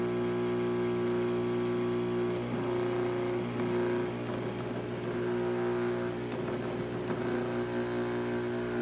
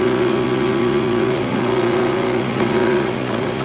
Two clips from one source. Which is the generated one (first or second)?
second